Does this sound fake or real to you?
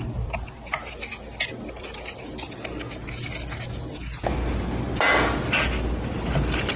real